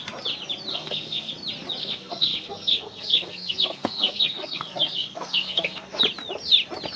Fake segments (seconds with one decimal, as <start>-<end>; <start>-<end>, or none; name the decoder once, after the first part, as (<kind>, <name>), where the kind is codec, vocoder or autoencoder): 0.7-1.3 (codec, SNAC); 1.8-6.0